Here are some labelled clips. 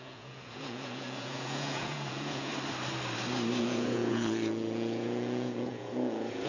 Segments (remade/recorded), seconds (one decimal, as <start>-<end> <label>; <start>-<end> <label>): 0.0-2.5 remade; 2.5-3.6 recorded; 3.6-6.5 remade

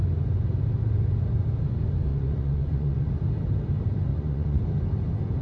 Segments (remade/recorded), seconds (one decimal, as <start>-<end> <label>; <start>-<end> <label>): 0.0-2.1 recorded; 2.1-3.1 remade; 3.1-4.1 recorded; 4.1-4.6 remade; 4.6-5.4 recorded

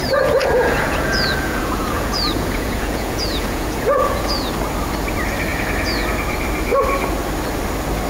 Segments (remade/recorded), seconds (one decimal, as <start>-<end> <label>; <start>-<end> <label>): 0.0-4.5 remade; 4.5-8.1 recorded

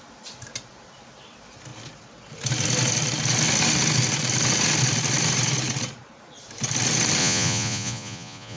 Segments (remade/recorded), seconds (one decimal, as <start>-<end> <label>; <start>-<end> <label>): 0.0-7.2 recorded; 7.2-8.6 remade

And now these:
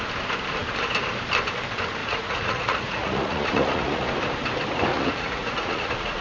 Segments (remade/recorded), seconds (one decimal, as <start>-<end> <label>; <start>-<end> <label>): 0.0-2.0 recorded; 2.0-4.1 remade; 4.1-4.9 recorded; 4.9-6.2 remade